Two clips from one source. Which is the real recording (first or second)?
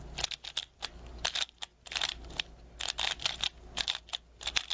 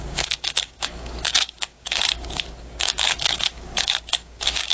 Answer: first